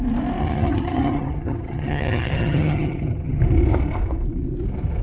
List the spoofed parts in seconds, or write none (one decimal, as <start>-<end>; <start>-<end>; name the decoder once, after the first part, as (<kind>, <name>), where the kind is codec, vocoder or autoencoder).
0.4-3.4 (vocoder, HiFi-GAN)